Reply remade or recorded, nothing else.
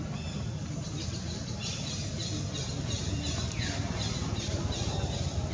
recorded